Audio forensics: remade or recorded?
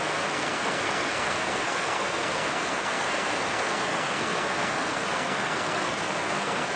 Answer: remade